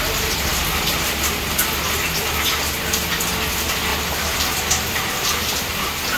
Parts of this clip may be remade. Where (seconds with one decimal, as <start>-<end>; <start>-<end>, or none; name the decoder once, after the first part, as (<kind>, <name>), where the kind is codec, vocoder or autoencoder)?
3.9-5.8 (vocoder, BigVGAN v2)